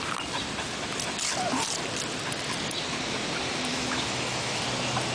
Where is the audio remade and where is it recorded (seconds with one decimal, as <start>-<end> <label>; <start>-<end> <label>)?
0.0-3.7 recorded; 3.7-4.6 remade; 4.6-5.1 recorded